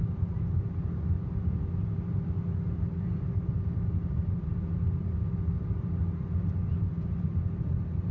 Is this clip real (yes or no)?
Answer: yes